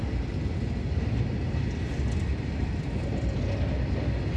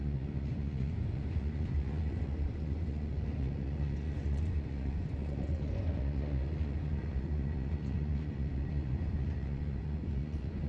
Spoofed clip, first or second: second